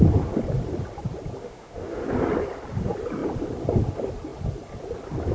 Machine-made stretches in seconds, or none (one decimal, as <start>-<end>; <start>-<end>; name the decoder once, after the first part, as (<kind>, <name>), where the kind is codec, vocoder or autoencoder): 1.4-2.0 (autoencoder, DAC-VAE)